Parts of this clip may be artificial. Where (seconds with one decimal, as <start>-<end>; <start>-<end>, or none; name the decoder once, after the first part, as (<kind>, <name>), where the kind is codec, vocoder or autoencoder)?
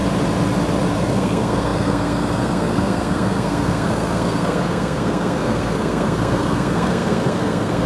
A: 0.9-7.9 (codec, SNAC)